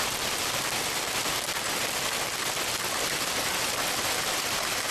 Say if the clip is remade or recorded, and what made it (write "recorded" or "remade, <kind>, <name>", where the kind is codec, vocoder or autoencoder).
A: recorded